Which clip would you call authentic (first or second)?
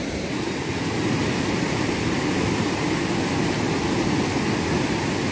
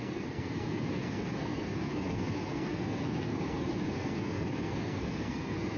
first